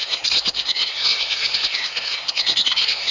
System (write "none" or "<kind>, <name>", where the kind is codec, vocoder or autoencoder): codec, SNAC